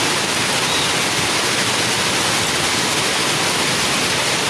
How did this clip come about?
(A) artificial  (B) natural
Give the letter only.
B